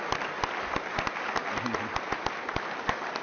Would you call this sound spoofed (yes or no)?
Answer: no